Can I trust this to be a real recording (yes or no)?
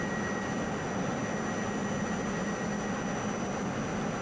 yes